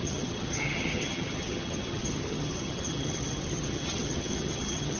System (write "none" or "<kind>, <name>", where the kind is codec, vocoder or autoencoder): vocoder, HiFi-GAN